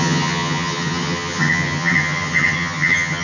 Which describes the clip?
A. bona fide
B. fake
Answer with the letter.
B